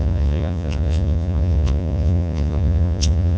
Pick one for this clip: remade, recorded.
remade